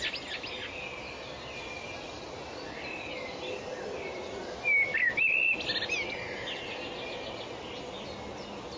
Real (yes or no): yes